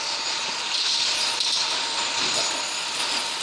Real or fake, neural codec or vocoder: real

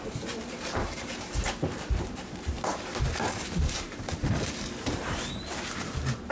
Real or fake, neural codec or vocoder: fake, vocoder, BigVGAN v2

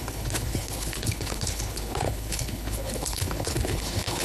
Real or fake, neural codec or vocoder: fake, codec, HILCodec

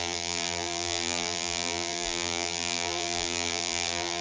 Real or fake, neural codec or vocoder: fake, vocoder, BigVGAN v2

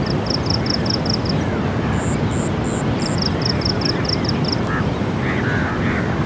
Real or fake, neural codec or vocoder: real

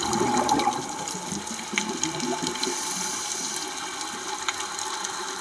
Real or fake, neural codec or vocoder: real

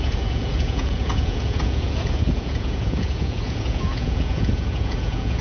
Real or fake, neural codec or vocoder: fake, vocoder, Vocos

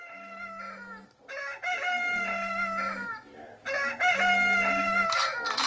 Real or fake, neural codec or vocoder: real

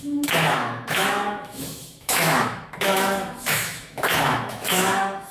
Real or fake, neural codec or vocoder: fake, autoencoder, DAC-VAE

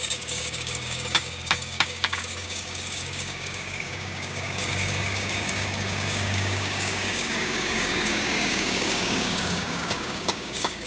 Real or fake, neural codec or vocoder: fake, codec, DAC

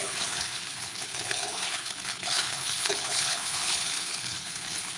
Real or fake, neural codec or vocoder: fake, codec, HILCodec